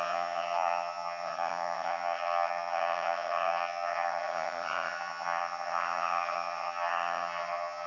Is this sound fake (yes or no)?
yes